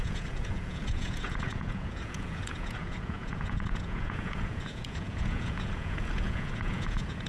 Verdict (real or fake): fake